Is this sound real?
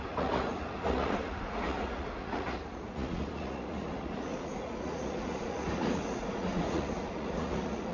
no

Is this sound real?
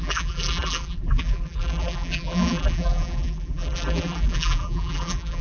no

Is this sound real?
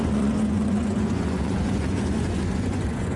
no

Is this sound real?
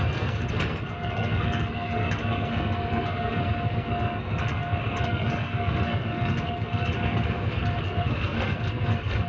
no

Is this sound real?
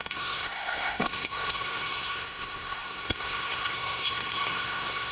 no